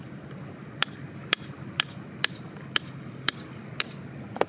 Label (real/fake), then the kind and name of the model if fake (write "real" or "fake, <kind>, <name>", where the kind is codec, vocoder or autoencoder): real